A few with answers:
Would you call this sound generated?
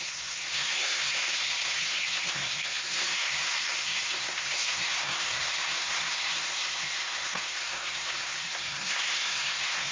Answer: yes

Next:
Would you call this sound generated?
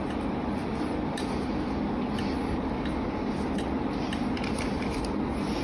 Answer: no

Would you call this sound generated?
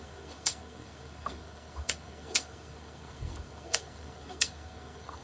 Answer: yes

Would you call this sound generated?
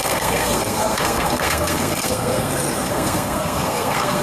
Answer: yes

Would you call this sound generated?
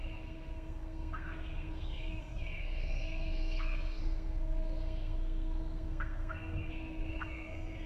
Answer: yes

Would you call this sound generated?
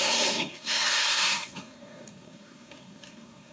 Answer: yes